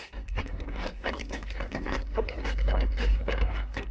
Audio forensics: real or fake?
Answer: fake